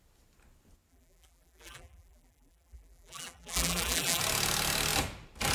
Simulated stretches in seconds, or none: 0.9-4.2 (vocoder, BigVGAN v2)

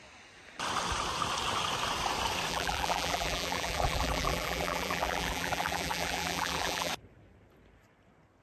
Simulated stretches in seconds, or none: 2.5-6.9 (vocoder, BigVGAN v2)